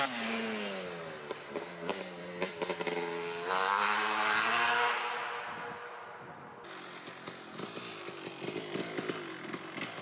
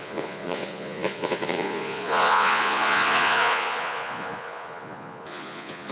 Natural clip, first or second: first